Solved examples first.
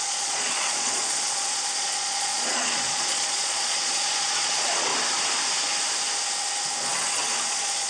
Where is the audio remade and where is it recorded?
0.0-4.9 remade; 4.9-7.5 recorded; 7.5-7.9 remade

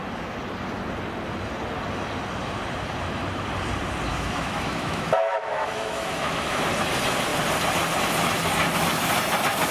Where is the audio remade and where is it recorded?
0.0-4.1 recorded; 4.1-6.6 remade; 6.6-9.7 recorded

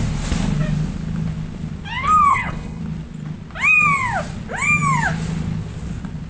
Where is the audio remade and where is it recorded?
0.0-2.3 recorded; 2.3-2.8 remade; 2.8-6.3 recorded

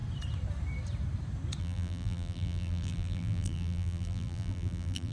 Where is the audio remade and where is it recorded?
0.0-1.6 recorded; 1.6-5.1 remade

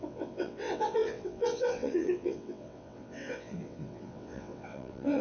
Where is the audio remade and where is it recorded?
0.0-5.2 remade

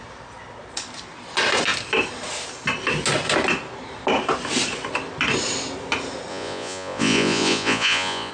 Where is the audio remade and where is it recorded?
0.0-6.3 recorded; 6.3-8.3 remade

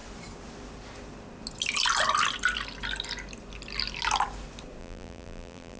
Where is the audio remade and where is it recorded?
0.0-4.8 recorded; 4.8-5.8 remade

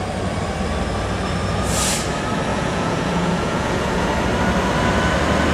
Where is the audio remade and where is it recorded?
0.0-2.5 recorded; 2.5-4.1 remade; 4.1-5.5 recorded